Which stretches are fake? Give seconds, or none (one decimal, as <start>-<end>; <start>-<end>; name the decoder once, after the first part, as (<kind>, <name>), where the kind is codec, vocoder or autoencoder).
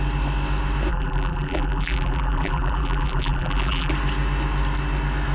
0.9-3.9 (vocoder, BigVGAN v2)